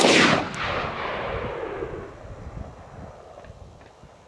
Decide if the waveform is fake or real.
real